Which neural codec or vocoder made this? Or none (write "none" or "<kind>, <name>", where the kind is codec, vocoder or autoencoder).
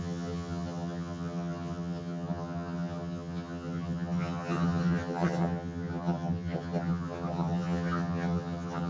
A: vocoder, HiFi-GAN